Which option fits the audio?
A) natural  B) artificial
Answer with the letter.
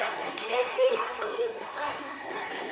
B